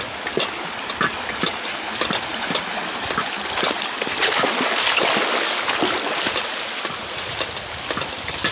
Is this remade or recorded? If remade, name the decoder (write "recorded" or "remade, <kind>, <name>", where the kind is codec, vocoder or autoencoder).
recorded